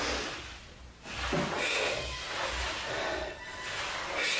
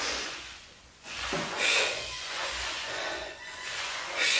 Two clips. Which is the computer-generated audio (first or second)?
second